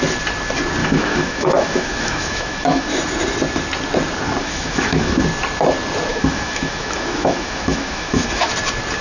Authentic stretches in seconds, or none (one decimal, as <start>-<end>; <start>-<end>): 0.0-0.8; 3.0-4.4; 5.2-6.1; 8.5-9.0